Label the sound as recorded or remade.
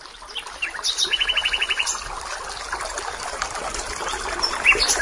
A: recorded